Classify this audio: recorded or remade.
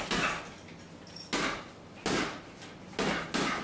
recorded